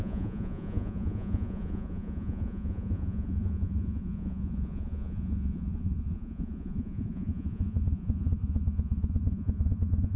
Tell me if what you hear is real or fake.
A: fake